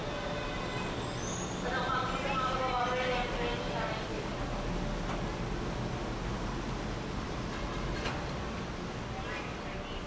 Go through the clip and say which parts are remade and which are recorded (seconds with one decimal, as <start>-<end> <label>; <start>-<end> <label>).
0.0-10.1 recorded